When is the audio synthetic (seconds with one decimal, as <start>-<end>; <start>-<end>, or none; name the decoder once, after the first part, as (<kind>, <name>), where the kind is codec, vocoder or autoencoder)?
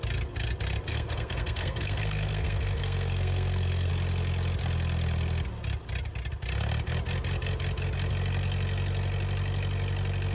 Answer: 0.9-3.9 (codec, SNAC)